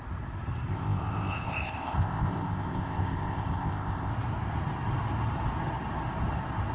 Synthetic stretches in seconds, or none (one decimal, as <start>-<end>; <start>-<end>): 0.7-4.1